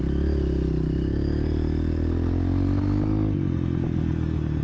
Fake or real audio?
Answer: real